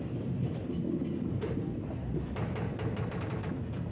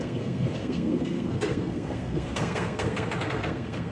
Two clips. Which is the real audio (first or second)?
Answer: first